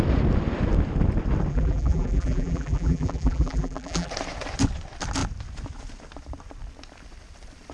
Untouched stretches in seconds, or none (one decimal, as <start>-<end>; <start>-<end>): 0.0-1.5; 4.1-7.7